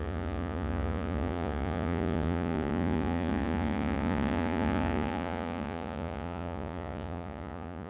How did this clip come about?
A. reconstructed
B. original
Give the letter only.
A